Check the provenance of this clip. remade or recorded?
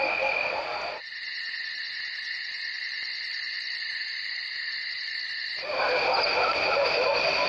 recorded